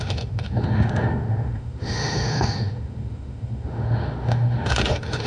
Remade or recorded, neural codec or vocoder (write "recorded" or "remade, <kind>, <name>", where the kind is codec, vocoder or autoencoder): remade, autoencoder, DAC-VAE